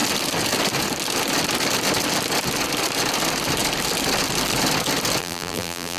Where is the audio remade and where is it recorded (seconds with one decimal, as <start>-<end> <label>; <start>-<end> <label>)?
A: 0.0-5.2 recorded; 5.2-6.0 remade